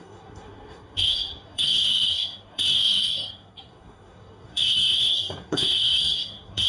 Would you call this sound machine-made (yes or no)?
yes